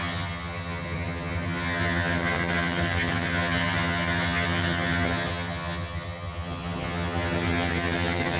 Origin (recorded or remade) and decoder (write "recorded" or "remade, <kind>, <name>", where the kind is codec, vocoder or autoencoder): remade, vocoder, HiFi-GAN